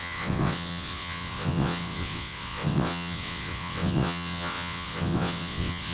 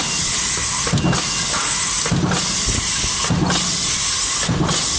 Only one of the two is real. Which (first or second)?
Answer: second